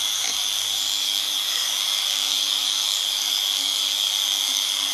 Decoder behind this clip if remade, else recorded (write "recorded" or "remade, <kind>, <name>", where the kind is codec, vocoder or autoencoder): remade, codec, DAC